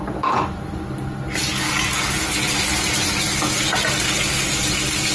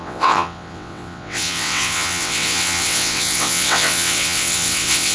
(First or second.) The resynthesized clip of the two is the second